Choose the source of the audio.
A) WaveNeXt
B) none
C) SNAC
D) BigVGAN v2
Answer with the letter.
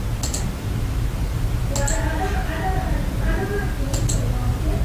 B